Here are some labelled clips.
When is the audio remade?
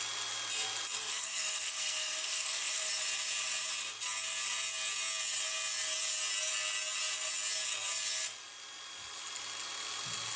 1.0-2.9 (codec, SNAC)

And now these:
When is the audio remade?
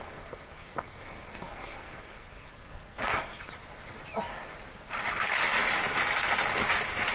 0.0-3.5 (codec, SNAC)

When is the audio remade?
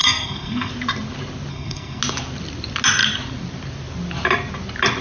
0.0-0.7 (codec, SNAC); 1.5-2.0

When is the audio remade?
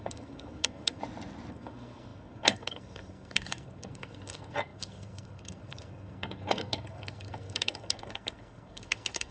0.0-1.0 (codec, SNAC); 1.5-9.3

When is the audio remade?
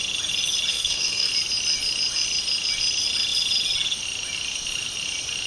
0.7-1.3 (codec, SNAC)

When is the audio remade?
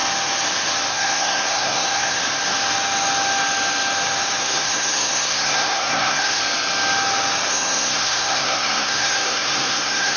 0.9-2.2 (codec, SNAC); 4.4-6.4; 7.5-10.2